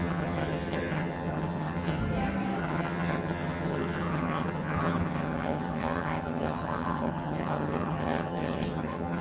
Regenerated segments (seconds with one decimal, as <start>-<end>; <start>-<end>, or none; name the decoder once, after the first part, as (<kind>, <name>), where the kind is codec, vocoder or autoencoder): 0.0-2.0 (vocoder, HiFi-GAN); 2.6-9.2